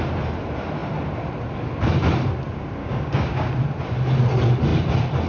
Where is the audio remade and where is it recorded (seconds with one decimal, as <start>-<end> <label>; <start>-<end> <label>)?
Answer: 0.0-2.8 recorded; 2.8-3.5 remade; 3.5-5.3 recorded